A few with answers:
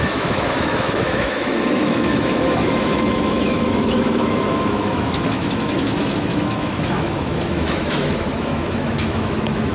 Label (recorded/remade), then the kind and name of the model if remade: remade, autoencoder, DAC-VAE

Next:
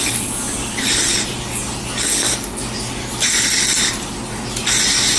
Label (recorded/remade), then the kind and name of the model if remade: recorded